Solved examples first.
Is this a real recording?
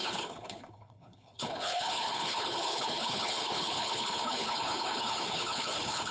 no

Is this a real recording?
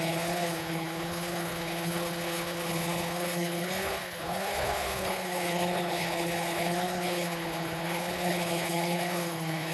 no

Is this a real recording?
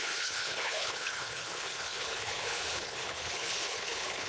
no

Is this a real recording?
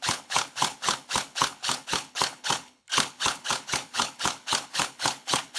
no